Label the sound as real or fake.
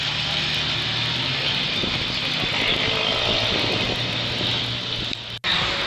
real